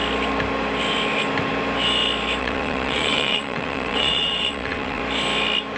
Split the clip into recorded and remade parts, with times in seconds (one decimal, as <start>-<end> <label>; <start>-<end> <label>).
0.0-2.4 recorded; 2.4-5.0 remade; 5.0-5.8 recorded